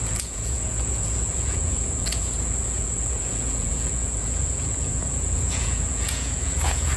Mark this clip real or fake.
fake